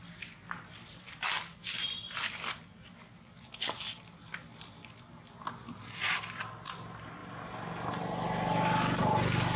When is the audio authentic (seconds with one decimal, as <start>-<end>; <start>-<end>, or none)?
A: 0.0-9.6